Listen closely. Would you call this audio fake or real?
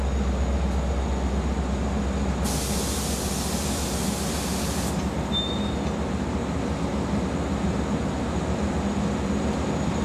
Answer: real